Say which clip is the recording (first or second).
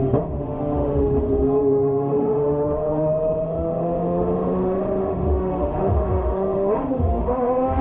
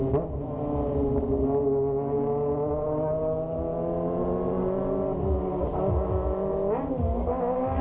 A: second